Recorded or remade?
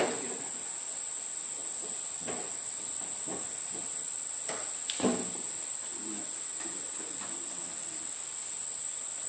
recorded